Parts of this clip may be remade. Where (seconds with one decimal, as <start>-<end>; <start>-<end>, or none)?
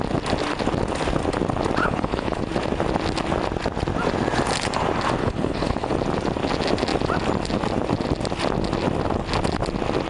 1.8-2.4; 5.2-5.9